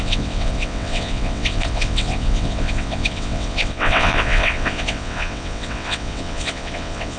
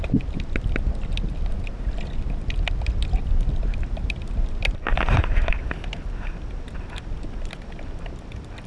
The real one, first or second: second